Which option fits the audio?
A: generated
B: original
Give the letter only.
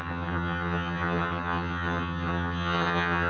A